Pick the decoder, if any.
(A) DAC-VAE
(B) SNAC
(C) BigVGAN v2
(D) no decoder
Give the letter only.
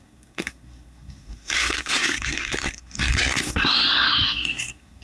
B